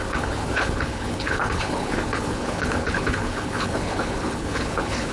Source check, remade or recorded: remade